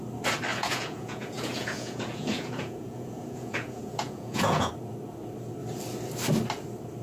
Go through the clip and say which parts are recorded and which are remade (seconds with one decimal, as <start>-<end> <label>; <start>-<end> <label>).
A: 0.0-0.5 recorded; 0.5-4.7 remade; 4.7-7.0 recorded